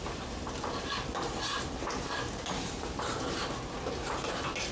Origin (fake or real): fake